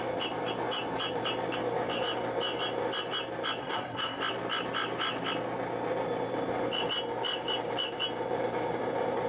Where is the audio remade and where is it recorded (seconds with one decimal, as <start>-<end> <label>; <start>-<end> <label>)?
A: 0.0-3.6 recorded; 3.6-4.2 remade; 4.2-9.3 recorded